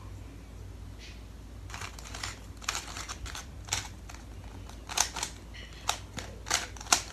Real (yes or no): yes